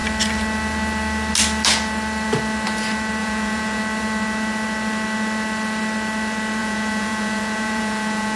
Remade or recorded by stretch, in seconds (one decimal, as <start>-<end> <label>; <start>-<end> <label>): 0.0-3.2 recorded; 3.2-3.8 remade; 3.8-6.6 recorded; 6.6-8.4 remade

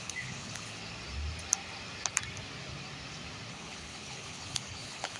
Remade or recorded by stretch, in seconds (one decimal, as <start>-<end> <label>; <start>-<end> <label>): 0.0-0.8 remade; 0.8-3.5 recorded; 3.5-5.2 remade

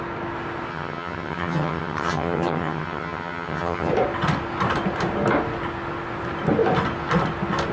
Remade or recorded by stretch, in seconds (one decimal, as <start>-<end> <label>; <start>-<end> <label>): 0.0-0.7 recorded; 0.7-3.9 remade; 3.9-7.7 recorded

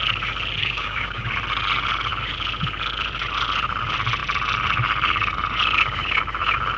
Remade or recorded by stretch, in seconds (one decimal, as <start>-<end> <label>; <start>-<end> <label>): 0.0-0.6 recorded; 0.6-1.3 remade; 1.3-6.8 recorded

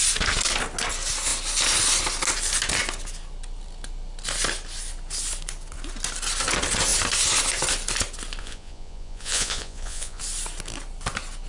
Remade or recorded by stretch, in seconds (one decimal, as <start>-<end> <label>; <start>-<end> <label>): 0.0-8.4 recorded; 8.4-10.2 remade; 10.2-11.5 recorded

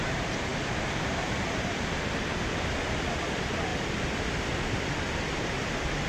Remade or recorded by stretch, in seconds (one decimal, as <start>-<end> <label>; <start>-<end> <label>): 0.0-0.5 recorded; 0.5-2.3 remade; 2.3-6.1 recorded